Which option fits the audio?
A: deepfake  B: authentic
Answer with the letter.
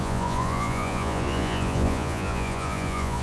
A